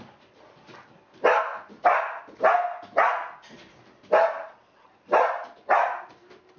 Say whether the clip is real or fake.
real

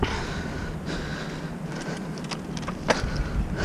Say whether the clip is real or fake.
real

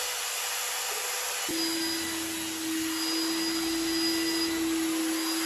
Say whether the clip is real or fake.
real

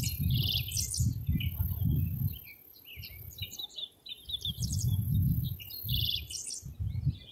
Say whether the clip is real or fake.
real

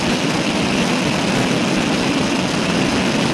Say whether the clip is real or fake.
real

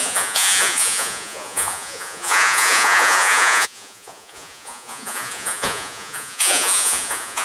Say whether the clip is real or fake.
fake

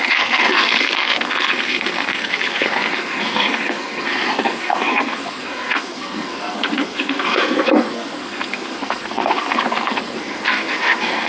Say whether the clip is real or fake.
fake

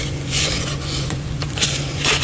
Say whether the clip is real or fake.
fake